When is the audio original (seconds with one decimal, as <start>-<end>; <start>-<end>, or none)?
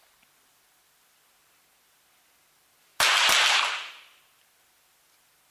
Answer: 0.0-5.5